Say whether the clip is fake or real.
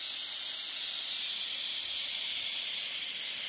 real